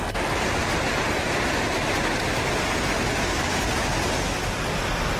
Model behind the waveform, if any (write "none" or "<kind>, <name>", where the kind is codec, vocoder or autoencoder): none